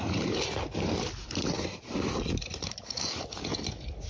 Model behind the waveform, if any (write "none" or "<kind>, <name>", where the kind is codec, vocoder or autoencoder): none